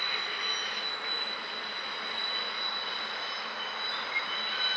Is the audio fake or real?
real